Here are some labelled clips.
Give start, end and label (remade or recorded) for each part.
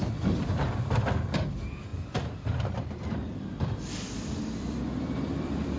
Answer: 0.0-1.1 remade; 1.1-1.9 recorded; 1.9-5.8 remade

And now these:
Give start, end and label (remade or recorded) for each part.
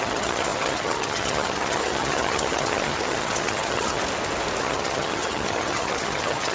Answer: 0.0-4.0 remade; 4.0-4.6 recorded; 4.6-6.5 remade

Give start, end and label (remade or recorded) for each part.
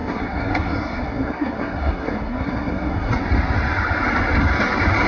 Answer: 0.0-3.1 remade; 3.1-5.1 recorded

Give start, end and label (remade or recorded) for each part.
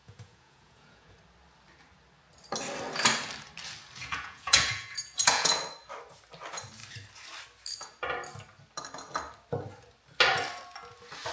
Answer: 0.0-1.1 remade; 1.1-4.0 recorded; 4.0-5.6 remade; 5.6-11.3 recorded